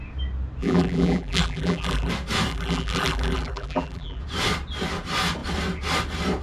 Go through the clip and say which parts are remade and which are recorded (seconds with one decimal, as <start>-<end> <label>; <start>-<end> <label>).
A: 0.0-0.6 recorded; 0.6-2.1 remade; 2.1-2.5 recorded; 2.5-4.2 remade; 4.2-6.4 recorded